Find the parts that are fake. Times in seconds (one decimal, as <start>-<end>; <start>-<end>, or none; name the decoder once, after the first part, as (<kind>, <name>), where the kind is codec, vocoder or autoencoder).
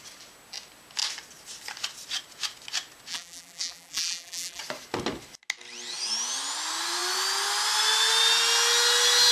3.1-4.6 (vocoder, BigVGAN v2)